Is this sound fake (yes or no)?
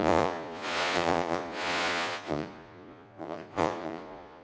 yes